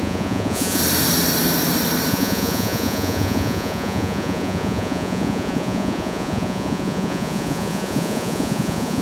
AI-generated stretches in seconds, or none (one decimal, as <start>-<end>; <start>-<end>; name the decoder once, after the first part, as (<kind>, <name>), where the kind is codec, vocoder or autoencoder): 0.0-0.8 (vocoder, Vocos); 2.1-9.0